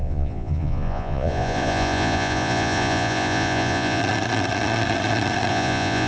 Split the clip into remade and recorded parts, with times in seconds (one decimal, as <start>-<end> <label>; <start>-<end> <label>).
0.0-4.0 remade; 4.0-5.5 recorded; 5.5-6.1 remade